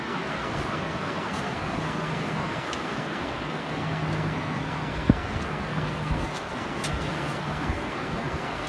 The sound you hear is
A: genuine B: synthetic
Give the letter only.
B